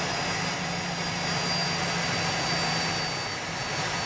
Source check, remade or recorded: recorded